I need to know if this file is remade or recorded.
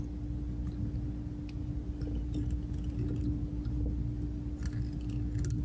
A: recorded